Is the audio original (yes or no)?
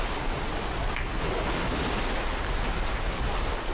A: yes